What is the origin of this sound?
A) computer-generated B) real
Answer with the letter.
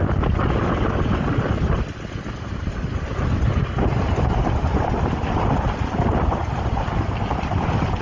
B